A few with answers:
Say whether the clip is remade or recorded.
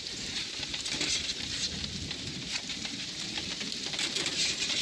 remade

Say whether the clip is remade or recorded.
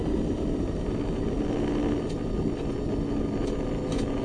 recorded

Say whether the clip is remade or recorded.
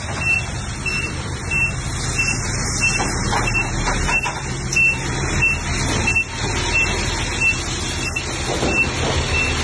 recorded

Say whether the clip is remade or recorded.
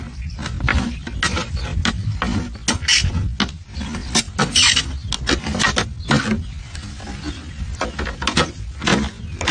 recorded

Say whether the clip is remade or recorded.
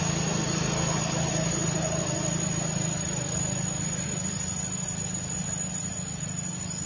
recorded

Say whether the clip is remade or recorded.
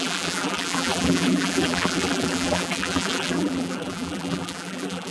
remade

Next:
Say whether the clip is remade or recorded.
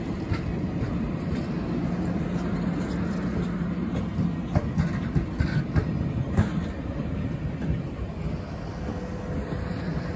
recorded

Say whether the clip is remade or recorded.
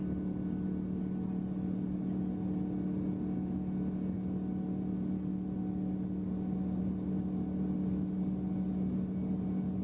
recorded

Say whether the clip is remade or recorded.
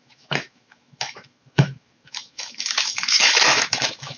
remade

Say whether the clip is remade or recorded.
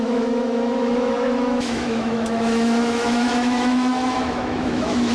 remade